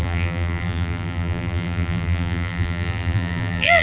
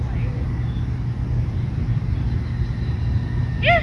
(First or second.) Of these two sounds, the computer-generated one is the first